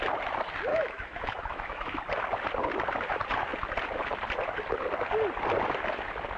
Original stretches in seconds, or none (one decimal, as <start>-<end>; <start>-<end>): 0.0-0.7; 2.0-6.4